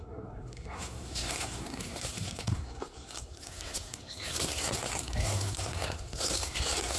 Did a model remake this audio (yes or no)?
yes